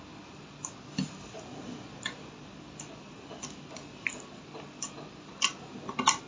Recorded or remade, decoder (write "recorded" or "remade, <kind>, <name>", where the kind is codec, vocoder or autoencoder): recorded